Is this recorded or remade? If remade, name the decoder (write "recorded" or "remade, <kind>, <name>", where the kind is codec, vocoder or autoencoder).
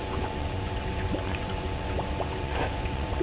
remade, vocoder, Vocos